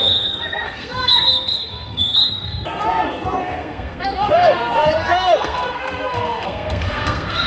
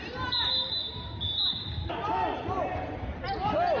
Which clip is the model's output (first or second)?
first